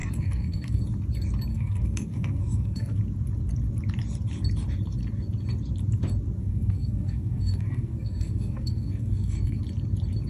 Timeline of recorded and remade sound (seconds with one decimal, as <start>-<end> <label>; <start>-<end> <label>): 0.0-0.8 remade; 0.8-1.5 recorded; 1.5-3.0 remade; 3.0-6.4 recorded; 6.4-9.6 remade; 9.6-10.3 recorded